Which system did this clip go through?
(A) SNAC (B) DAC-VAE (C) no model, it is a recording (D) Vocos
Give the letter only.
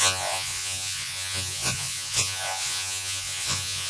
D